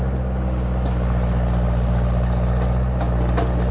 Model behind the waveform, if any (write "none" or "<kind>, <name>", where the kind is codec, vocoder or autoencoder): none